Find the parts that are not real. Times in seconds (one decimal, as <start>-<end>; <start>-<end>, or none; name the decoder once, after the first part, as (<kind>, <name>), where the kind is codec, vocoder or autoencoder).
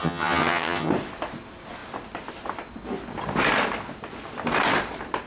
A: 0.0-0.9 (vocoder, HiFi-GAN)